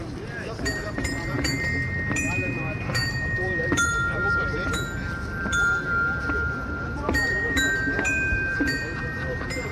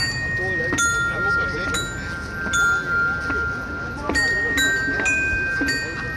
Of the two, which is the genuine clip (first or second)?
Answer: second